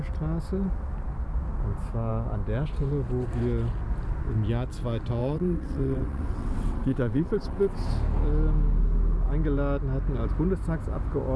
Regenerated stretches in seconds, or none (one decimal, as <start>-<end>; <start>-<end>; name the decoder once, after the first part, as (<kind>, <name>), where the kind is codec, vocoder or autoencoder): 5.2-7.9 (vocoder, WaveNeXt)